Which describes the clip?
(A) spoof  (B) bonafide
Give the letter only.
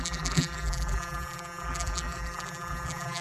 A